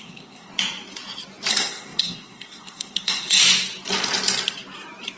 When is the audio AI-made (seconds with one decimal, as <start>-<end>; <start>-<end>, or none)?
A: 0.0-0.5; 1.5-3.4